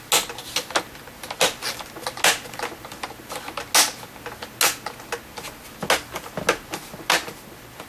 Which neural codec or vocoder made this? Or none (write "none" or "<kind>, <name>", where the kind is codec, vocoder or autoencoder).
none